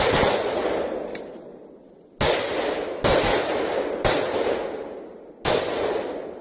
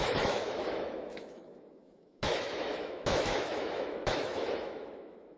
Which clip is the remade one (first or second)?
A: second